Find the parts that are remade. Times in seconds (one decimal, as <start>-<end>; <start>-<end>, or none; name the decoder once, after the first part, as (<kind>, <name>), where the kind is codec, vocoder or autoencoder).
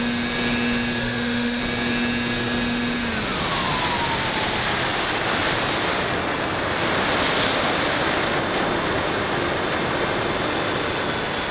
1.0-1.6 (autoencoder, DAC-VAE)